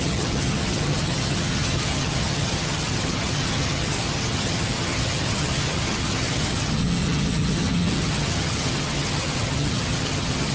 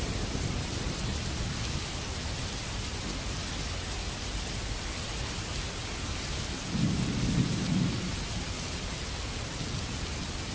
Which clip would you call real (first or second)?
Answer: second